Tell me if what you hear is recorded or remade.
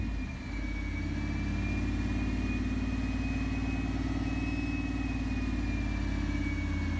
recorded